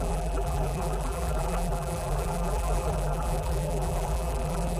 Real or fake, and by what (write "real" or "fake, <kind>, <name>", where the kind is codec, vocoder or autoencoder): fake, vocoder, BigVGAN v2